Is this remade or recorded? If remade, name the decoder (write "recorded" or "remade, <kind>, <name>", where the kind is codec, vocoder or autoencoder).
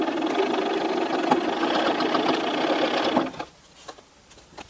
recorded